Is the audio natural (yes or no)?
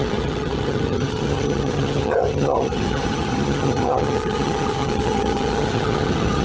no